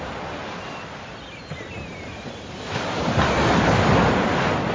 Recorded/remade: recorded